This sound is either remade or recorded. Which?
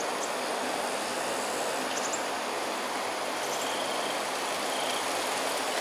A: recorded